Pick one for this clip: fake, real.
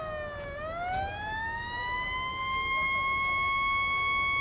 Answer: real